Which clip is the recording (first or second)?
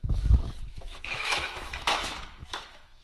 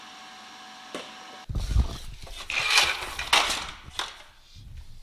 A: second